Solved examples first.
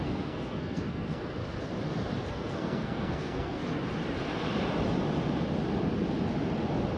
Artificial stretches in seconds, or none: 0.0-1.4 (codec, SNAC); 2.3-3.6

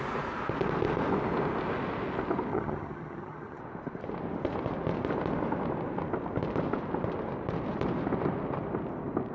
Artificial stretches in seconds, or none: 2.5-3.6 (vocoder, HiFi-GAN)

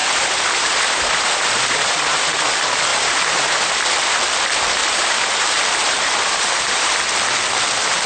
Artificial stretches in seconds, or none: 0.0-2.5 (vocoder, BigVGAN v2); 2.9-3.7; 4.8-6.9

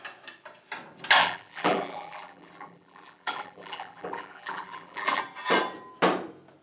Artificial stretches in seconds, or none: 1.2-5.2 (vocoder, BigVGAN v2)

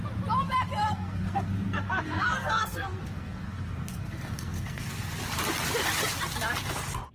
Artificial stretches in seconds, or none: 0.8-5.1 (codec, SNAC)